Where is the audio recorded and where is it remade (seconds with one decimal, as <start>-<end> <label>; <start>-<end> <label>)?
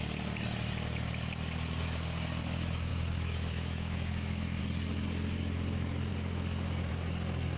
0.0-2.9 recorded; 2.9-4.6 remade; 4.6-7.6 recorded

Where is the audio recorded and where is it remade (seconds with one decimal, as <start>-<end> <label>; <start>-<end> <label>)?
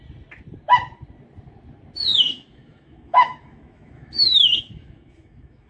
0.0-2.1 recorded; 2.1-5.7 remade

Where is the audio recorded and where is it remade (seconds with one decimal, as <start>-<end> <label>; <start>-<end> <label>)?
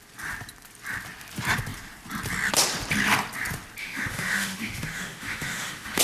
0.0-3.8 recorded; 3.8-6.0 remade